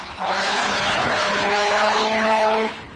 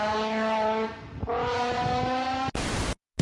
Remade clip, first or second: first